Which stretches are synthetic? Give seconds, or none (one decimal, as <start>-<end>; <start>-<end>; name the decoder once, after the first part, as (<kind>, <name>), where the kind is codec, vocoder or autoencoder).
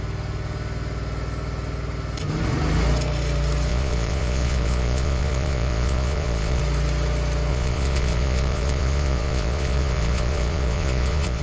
3.7-6.6 (vocoder, Vocos); 7.5-11.4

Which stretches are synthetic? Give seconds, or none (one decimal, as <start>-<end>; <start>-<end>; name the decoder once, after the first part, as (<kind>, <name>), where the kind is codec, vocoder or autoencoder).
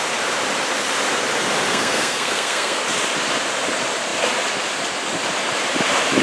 1.7-2.8 (codec, SNAC)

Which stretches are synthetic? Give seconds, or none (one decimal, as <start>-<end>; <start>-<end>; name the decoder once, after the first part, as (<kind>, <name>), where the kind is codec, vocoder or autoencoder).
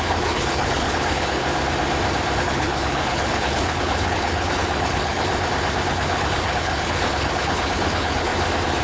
0.0-1.4 (codec, HILCodec); 2.4-5.3; 5.9-8.3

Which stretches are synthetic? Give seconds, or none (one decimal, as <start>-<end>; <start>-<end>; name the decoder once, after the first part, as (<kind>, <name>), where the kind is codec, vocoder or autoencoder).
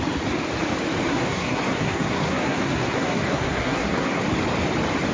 1.1-4.2 (codec, SNAC)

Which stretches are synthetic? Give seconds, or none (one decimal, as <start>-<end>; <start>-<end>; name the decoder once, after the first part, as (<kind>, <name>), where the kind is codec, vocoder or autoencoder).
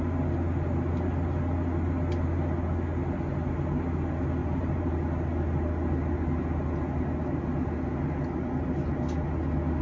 4.4-5.0 (vocoder, BigVGAN v2)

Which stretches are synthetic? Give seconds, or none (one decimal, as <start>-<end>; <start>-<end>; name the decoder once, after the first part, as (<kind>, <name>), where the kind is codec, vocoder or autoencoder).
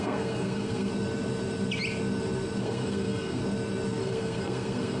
0.0-0.9 (codec, SNAC); 2.6-3.4; 4.0-5.0